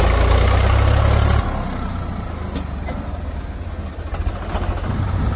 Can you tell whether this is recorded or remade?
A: recorded